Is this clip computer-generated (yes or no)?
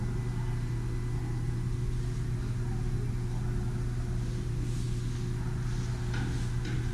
no